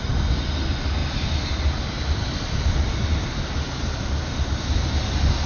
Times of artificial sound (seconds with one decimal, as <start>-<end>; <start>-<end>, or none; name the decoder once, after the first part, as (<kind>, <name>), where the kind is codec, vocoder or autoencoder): none

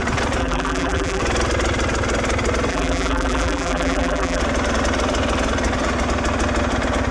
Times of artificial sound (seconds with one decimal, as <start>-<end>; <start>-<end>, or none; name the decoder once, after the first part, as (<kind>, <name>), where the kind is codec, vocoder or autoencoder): 0.4-1.2 (vocoder, BigVGAN v2); 2.7-4.4

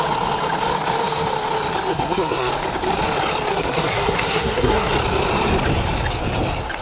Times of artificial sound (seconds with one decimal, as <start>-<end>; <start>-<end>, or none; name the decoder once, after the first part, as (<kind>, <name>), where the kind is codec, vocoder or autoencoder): 1.9-2.5 (codec, SNAC); 3.5-4.9

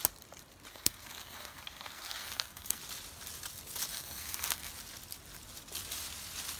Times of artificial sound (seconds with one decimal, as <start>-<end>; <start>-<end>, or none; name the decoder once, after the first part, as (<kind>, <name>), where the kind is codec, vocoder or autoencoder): 0.7-2.8 (codec, SNAC); 3.9-4.7

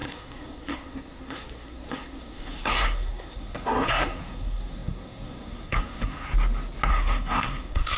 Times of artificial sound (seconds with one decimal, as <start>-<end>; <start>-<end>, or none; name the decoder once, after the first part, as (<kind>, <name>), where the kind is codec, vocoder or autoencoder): 0.0-6.3 (codec, SNAC); 6.9-8.0